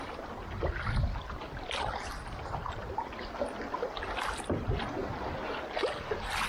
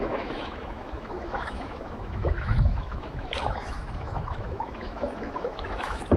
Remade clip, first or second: second